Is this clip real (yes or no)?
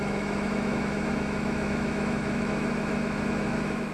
no